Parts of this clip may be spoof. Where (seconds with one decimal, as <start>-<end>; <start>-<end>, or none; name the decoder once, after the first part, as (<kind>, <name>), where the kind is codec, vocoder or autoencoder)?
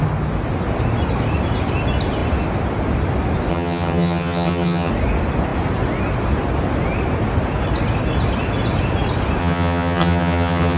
3.5-4.9 (vocoder, HiFi-GAN); 9.4-10.8